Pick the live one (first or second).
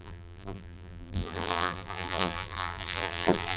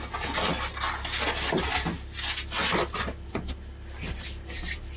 second